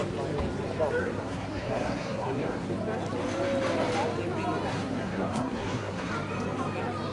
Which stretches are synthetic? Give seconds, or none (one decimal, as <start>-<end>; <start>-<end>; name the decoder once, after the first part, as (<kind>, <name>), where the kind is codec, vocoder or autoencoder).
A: 1.0-2.7 (codec, SNAC); 4.7-6.1